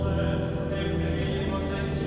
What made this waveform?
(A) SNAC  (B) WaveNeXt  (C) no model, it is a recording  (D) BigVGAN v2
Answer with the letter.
C